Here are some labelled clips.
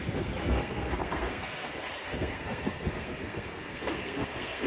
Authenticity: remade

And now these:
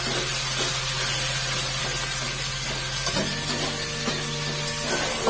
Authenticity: recorded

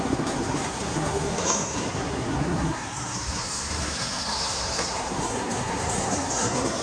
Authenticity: remade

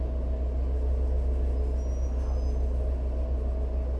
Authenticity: recorded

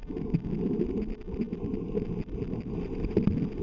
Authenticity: recorded